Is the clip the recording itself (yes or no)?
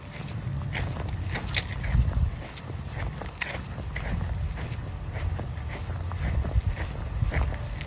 yes